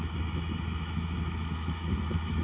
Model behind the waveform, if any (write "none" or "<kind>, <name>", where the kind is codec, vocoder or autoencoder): autoencoder, DAC-VAE